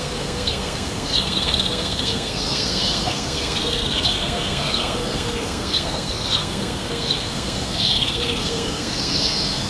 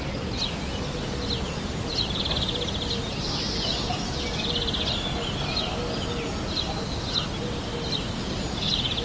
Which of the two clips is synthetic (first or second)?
first